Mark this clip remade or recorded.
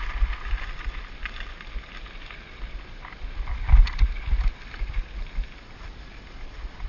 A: recorded